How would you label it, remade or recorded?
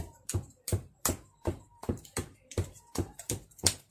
remade